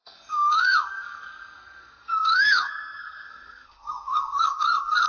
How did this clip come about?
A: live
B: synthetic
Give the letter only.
B